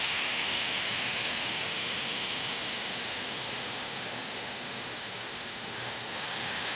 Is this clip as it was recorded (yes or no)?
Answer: no